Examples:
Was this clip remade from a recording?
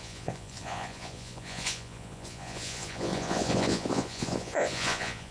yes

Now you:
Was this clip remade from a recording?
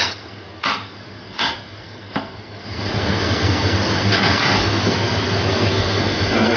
yes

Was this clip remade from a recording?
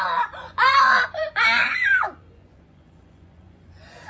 yes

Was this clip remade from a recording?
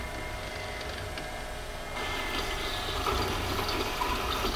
no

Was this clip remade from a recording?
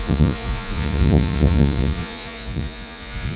yes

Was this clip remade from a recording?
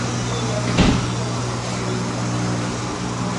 no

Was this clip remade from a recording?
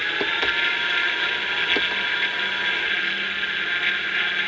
no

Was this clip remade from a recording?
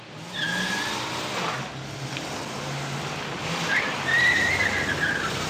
no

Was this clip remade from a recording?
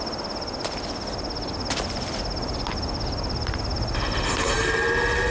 no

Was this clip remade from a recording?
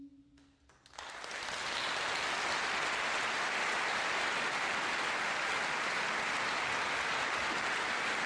no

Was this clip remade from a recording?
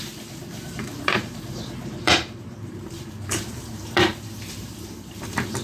yes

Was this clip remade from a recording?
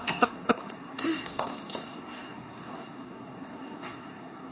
yes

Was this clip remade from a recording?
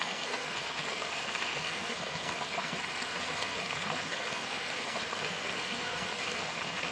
yes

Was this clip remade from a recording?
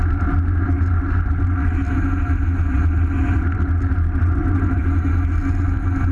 no